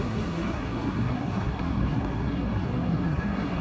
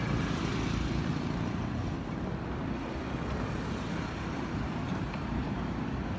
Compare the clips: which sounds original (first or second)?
second